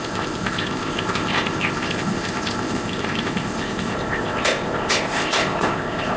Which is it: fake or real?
fake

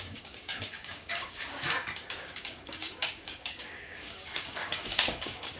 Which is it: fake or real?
fake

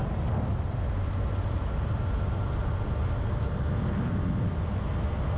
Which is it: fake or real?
real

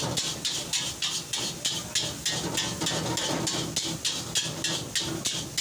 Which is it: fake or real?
real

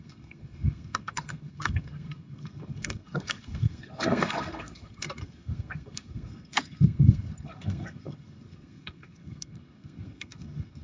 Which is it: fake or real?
fake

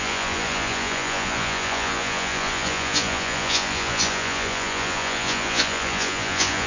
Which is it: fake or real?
fake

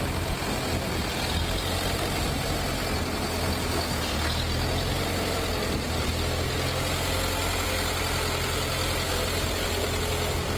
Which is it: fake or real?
real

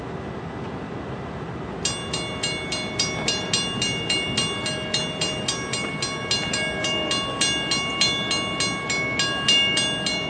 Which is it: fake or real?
real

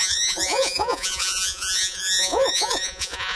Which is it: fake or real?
fake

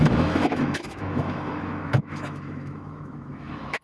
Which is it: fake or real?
fake